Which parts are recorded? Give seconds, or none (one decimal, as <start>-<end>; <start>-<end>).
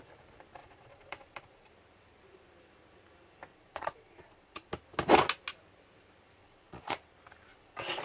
0.0-0.6; 1.7-3.5; 4.7-6.4; 7.0-7.5